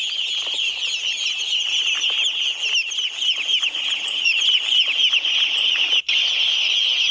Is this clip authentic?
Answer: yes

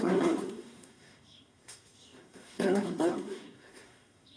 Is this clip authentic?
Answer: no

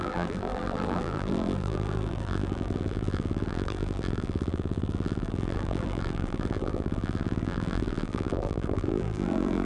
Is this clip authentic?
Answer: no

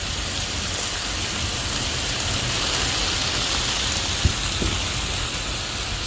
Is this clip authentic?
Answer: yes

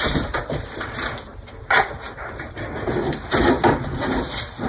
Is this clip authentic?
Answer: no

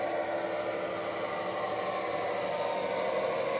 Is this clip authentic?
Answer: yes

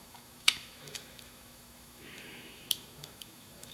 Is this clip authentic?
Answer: no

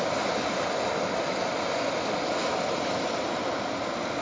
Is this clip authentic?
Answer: yes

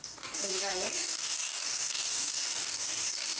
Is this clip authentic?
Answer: no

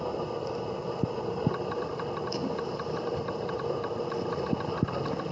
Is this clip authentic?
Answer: yes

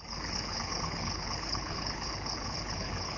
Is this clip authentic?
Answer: no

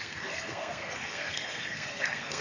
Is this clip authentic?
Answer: no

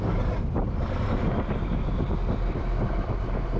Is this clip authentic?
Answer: yes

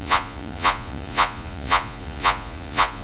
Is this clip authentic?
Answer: no